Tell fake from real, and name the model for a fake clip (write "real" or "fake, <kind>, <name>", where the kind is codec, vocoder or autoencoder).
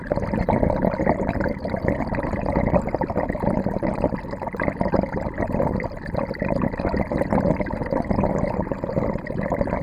real